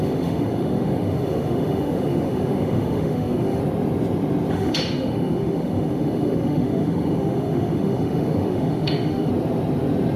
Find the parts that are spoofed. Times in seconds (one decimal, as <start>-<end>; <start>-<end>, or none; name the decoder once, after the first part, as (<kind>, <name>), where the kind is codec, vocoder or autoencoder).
0.0-3.6 (autoencoder, DAC-VAE); 4.5-9.3